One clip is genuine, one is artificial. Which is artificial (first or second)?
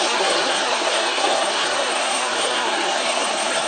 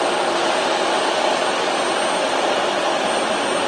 first